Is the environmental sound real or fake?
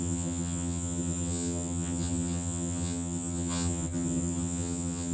fake